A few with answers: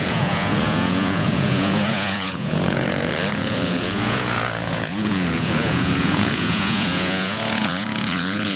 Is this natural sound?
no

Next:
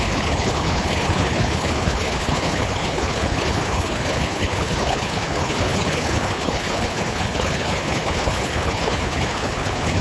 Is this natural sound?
no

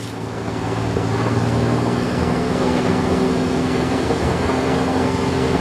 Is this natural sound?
no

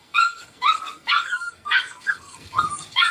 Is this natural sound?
no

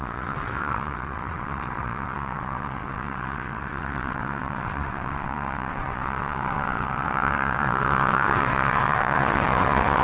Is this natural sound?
no